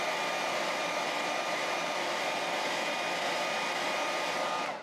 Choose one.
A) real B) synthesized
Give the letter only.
A